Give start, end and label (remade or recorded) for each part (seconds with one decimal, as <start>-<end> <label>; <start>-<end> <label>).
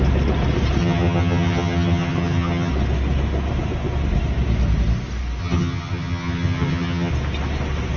0.0-0.8 recorded; 0.8-2.7 remade; 2.7-5.4 recorded; 5.4-7.1 remade; 7.1-8.0 recorded